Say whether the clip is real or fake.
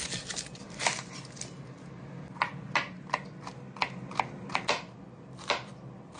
real